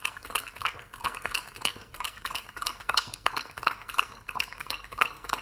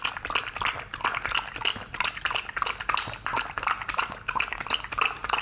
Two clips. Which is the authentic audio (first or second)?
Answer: second